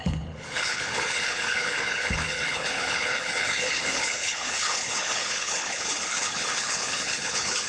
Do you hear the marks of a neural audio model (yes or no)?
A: yes